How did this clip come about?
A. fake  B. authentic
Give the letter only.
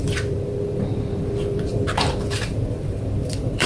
A